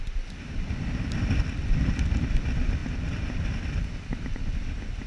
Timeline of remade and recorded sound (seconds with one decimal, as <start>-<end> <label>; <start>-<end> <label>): 0.0-5.1 recorded